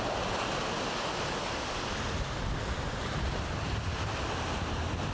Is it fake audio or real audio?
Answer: real